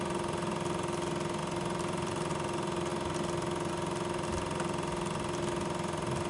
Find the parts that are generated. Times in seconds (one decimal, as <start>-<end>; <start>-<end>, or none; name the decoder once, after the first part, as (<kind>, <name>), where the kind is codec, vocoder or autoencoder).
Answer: 1.4-2.3 (vocoder, BigVGAN v2)

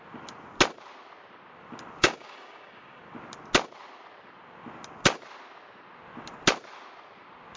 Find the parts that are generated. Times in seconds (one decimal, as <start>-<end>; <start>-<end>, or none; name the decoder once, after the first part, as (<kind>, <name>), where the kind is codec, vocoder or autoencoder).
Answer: 2.0-3.0 (codec, DAC)

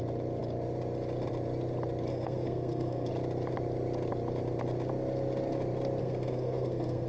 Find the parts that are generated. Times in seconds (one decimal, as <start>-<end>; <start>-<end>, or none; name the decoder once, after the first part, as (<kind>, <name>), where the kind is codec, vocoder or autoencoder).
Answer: 2.1-3.1 (codec, SNAC); 6.0-7.1

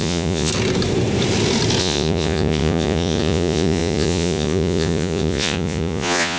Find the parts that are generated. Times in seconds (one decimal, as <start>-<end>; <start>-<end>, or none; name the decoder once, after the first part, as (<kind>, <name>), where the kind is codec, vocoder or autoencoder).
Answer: 0.0-0.5 (vocoder, Vocos); 1.8-6.4

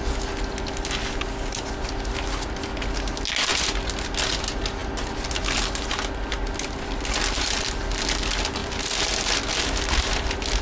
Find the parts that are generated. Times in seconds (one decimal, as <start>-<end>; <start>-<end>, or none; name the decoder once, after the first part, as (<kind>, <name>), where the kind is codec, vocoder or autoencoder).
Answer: none